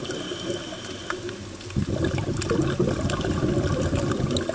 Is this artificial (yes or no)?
no